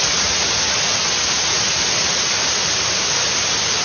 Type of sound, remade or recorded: recorded